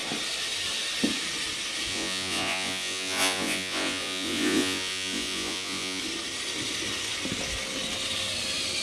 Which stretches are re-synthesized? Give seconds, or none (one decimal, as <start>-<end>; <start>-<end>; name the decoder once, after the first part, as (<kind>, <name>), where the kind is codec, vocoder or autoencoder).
1.9-6.0 (vocoder, Vocos)